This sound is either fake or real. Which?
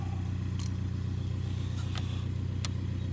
real